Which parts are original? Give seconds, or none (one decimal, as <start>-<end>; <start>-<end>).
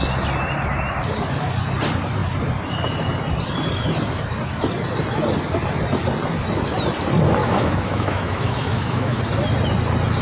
0.0-7.4; 9.2-10.2